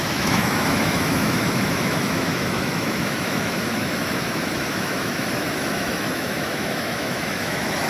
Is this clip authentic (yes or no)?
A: no